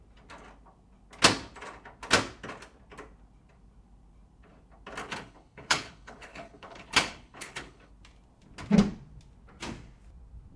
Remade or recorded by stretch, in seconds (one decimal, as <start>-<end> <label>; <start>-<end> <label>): 0.0-5.0 recorded; 5.0-7.9 remade; 7.9-10.6 recorded